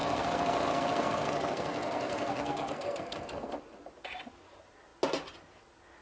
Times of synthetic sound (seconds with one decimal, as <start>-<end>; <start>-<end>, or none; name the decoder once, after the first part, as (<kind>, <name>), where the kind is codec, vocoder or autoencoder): 0.0-3.6 (codec, SNAC)